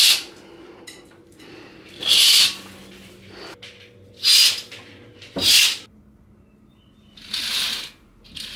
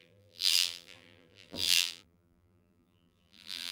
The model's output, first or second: second